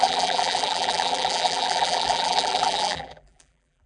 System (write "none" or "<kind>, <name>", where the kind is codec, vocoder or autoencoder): vocoder, BigVGAN v2